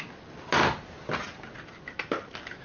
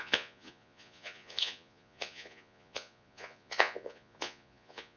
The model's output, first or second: second